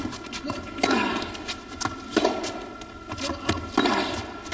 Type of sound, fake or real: real